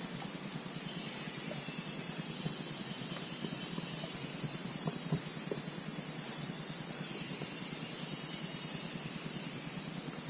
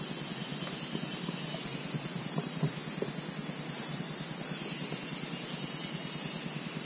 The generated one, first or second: first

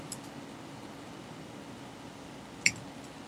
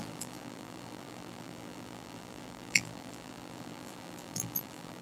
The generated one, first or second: second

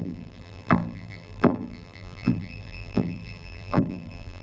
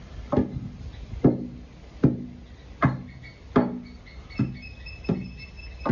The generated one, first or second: first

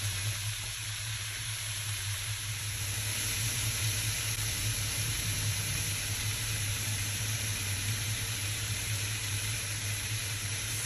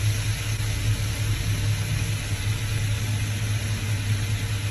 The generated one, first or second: first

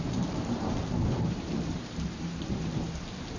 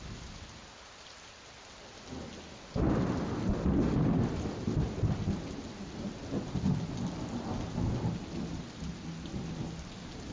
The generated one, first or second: first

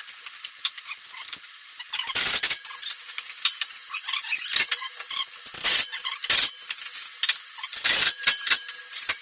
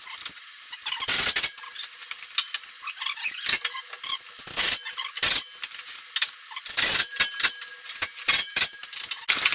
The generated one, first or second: first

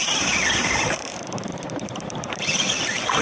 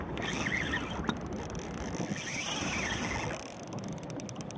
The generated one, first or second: first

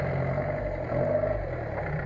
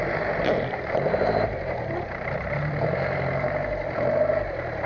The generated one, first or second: second